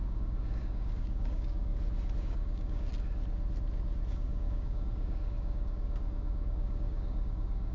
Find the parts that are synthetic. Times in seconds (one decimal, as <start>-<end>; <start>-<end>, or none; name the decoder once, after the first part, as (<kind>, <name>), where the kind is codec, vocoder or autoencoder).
0.0-1.7 (codec, DAC); 2.2-2.9; 4.1-7.7